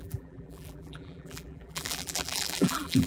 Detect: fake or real fake